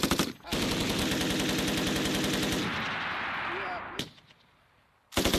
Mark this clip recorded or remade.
recorded